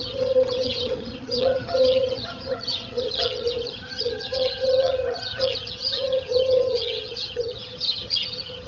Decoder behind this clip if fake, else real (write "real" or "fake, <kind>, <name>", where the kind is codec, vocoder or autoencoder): fake, vocoder, HiFi-GAN